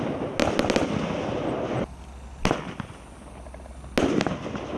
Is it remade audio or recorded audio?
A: recorded